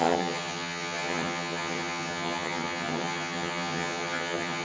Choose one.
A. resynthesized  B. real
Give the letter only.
A